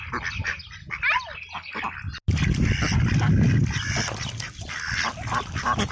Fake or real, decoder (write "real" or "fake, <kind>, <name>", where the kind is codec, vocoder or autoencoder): real